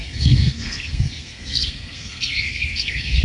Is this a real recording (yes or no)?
no